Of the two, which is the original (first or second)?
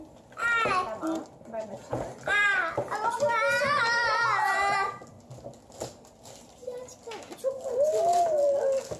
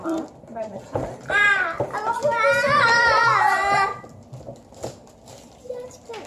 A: first